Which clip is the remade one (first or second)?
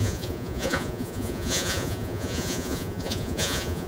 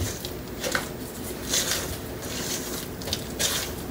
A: first